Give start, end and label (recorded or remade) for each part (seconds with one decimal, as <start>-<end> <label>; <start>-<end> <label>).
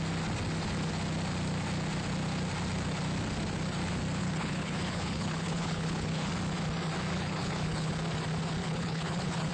0.0-4.2 recorded; 4.2-6.3 remade; 6.3-7.1 recorded; 7.1-7.9 remade; 7.9-8.6 recorded; 8.6-9.5 remade